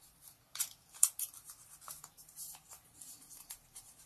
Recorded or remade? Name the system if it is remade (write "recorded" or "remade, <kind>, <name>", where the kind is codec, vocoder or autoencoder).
remade, vocoder, BigVGAN v2